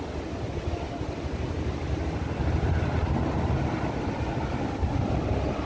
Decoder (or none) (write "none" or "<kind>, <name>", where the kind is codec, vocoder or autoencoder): none